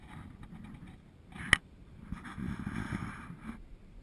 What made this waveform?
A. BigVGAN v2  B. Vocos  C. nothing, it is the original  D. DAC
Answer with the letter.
C